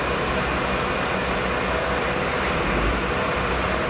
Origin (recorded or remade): recorded